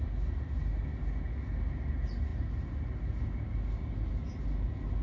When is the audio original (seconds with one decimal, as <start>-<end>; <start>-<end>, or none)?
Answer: 0.0-5.0